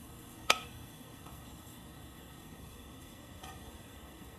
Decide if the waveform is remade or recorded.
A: remade